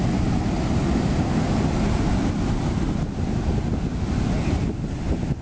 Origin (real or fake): real